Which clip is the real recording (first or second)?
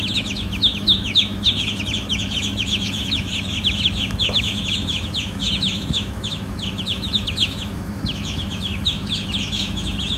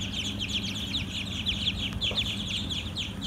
second